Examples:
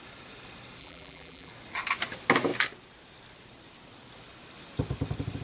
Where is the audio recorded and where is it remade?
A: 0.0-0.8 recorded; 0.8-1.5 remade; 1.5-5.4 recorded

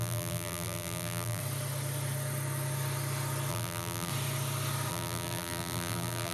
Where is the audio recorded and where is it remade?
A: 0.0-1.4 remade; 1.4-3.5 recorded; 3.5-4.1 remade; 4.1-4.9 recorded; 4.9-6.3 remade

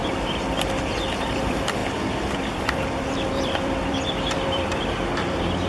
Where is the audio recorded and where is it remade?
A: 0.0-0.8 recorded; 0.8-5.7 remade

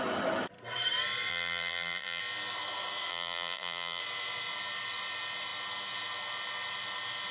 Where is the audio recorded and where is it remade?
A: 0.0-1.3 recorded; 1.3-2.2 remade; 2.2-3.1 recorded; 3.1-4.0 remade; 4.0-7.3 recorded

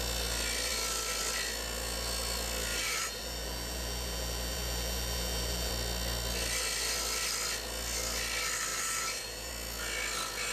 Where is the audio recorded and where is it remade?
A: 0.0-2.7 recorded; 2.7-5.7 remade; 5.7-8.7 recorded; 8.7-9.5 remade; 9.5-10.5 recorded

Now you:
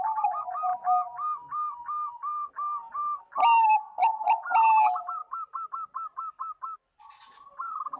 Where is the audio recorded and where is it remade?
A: 0.0-4.0 recorded; 4.0-4.6 remade; 4.6-8.0 recorded

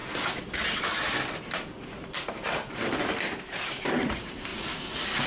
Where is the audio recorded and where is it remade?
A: 0.0-0.8 recorded; 0.8-1.7 remade; 1.7-3.4 recorded; 3.4-4.5 remade; 4.5-5.3 recorded